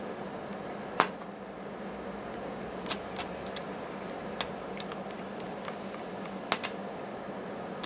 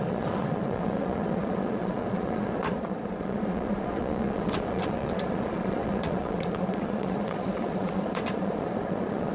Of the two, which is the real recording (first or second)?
first